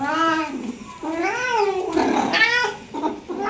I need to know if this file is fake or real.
real